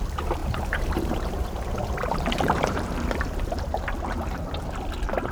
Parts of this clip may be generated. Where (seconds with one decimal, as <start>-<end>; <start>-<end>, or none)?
0.4-3.6